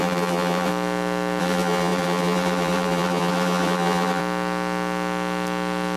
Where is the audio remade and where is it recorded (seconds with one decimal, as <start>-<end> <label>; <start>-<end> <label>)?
0.0-0.7 remade; 0.7-1.4 recorded; 1.4-4.2 remade; 4.2-6.0 recorded